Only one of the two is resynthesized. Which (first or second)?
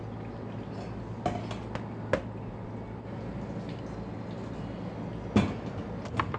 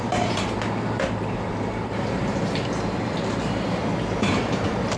second